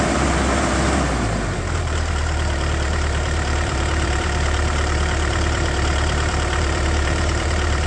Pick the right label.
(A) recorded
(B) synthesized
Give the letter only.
B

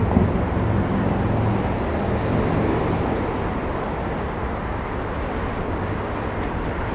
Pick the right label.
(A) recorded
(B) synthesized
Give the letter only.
A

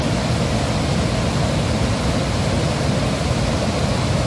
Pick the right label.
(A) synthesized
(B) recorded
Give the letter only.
B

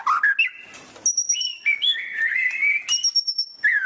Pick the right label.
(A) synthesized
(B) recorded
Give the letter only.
B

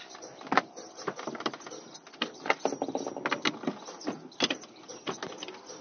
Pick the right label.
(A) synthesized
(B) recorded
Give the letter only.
B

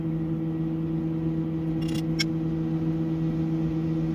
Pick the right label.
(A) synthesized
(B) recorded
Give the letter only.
B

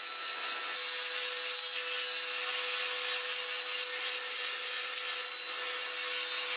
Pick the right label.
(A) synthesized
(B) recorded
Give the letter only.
B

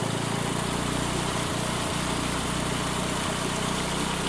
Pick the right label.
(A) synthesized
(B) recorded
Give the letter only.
B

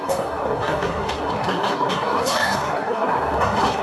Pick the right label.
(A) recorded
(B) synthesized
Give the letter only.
B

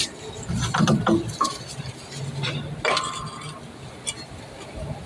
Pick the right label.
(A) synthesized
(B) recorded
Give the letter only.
B